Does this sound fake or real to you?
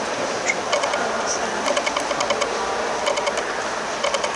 real